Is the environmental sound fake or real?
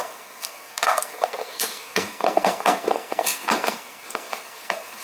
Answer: fake